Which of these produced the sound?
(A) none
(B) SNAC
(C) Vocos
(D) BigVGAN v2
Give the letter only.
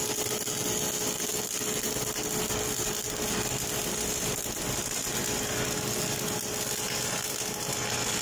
A